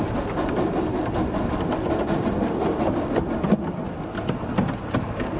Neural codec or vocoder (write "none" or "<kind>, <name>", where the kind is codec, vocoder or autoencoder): none